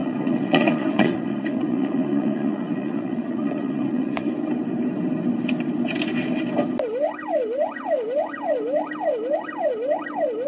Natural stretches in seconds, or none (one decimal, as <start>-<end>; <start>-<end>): 4.3-10.5